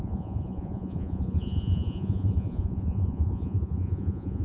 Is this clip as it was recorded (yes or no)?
no